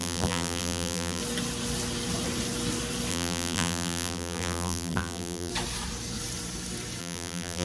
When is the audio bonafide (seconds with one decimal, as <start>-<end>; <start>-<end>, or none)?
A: 1.2-3.1; 5.5-7.0